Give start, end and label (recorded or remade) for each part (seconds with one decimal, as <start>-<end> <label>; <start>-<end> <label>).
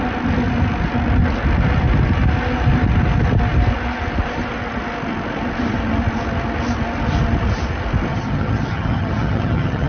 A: 0.0-8.1 recorded; 8.1-9.9 remade